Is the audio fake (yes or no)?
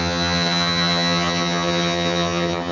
yes